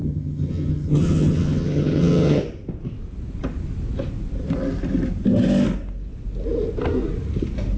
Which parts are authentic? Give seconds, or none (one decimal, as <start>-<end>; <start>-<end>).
2.4-7.8